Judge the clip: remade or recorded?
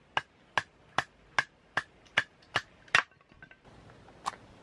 recorded